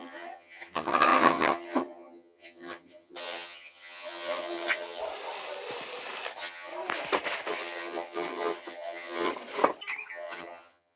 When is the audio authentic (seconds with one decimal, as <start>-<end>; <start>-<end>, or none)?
5.0-6.3; 6.7-7.5; 9.3-10.1